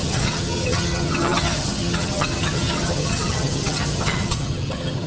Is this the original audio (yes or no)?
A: no